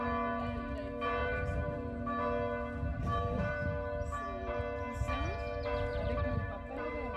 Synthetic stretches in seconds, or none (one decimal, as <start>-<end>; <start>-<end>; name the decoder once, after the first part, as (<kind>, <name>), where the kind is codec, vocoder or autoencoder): 1.2-1.8 (vocoder, BigVGAN v2); 2.9-3.5; 5.9-7.2